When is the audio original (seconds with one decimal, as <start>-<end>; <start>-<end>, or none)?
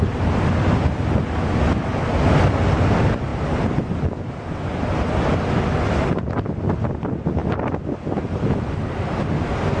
0.0-9.8